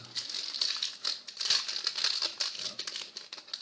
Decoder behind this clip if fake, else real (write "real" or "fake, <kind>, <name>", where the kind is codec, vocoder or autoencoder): real